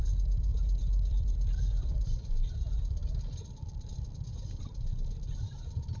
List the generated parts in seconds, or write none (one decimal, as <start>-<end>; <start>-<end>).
none